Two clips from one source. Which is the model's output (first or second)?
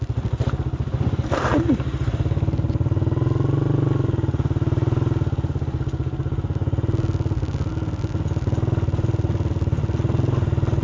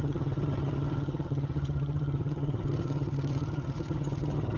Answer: second